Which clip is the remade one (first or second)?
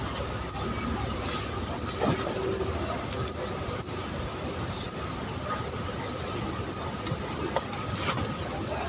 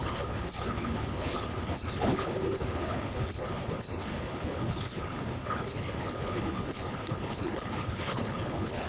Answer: second